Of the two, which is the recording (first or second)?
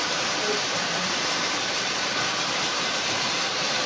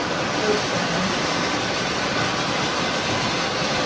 second